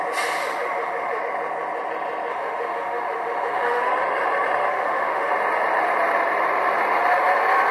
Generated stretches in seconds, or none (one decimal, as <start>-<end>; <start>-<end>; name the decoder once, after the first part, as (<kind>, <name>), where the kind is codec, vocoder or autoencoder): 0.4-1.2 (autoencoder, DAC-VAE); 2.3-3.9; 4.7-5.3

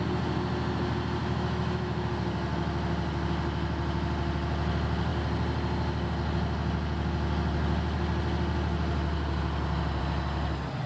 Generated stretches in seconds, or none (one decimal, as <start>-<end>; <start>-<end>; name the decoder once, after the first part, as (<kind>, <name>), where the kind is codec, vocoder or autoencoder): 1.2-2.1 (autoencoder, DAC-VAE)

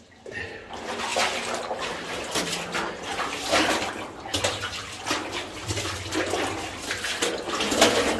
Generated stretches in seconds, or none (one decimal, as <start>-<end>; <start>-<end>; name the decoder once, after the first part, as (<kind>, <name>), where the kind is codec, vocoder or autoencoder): none

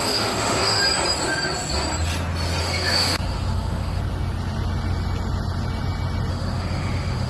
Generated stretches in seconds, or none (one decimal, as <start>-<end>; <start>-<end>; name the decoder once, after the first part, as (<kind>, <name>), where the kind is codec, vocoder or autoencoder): 0.0-0.8 (autoencoder, DAC-VAE); 2.6-4.0; 6.3-7.3